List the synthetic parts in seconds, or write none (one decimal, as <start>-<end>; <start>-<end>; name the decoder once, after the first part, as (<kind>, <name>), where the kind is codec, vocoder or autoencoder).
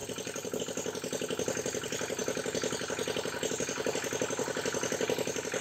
0.0-0.6 (vocoder, BigVGAN v2)